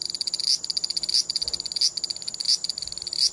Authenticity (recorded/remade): recorded